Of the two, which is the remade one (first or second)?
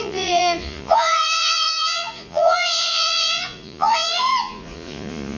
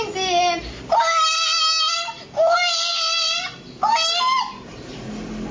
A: first